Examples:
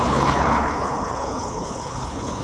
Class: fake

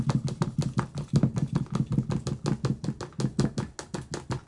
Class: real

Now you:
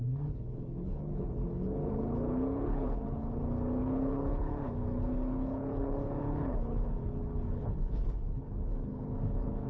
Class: fake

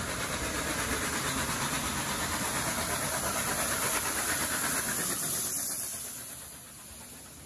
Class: real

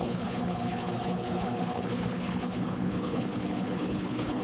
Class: fake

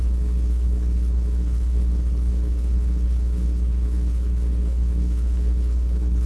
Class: fake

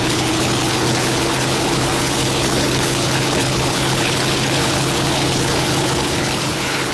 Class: fake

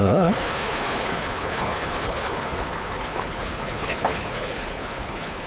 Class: fake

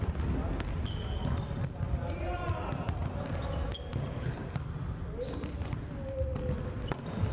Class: real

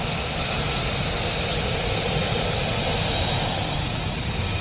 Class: real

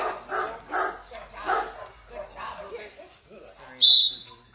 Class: real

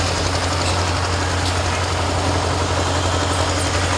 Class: real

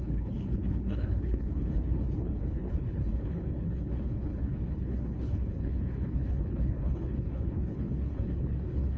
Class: fake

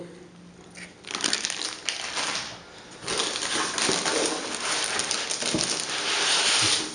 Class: real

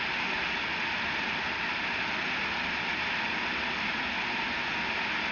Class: real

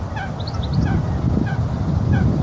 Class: real